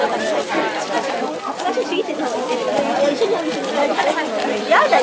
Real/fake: real